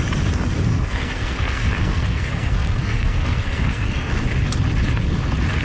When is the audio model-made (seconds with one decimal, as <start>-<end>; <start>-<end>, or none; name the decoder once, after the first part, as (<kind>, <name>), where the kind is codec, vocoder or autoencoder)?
0.7-4.1 (codec, SNAC)